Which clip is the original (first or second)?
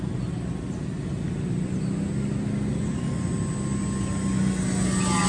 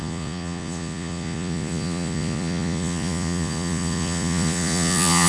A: first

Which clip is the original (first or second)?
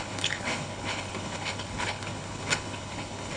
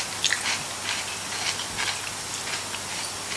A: second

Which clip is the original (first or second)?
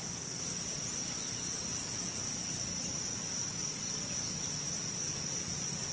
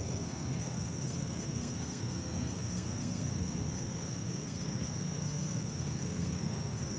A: first